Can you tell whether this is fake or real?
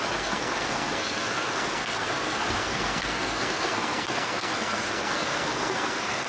fake